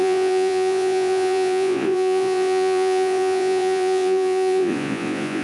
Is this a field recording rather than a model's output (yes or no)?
no